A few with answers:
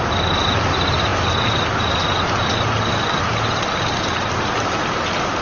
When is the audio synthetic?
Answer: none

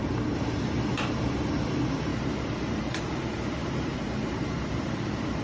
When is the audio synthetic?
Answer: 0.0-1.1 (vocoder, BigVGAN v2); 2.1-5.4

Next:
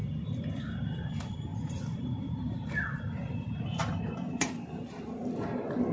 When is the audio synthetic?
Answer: 0.0-1.1 (vocoder, BigVGAN v2); 1.5-5.0